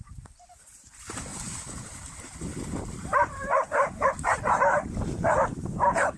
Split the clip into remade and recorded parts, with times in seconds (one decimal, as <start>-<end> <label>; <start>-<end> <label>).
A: 0.0-6.2 remade